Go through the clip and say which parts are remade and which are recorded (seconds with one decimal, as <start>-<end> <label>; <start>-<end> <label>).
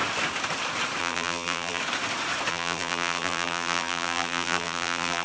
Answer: 0.0-1.0 recorded; 1.0-1.8 remade; 1.8-2.5 recorded; 2.5-5.2 remade